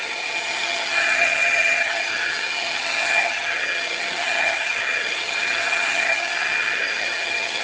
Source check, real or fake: fake